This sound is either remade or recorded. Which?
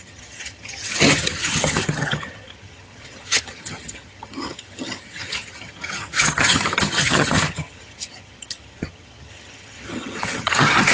remade